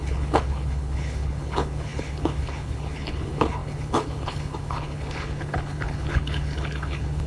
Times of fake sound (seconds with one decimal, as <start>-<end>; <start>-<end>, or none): 0.0-7.3